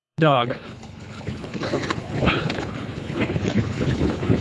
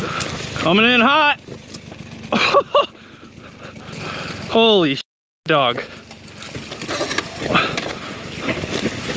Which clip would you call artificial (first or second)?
first